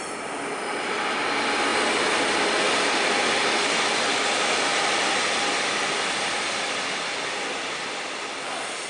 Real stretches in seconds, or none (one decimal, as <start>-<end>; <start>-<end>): 0.0-8.9